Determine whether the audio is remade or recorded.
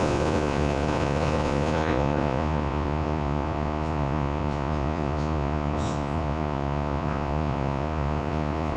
remade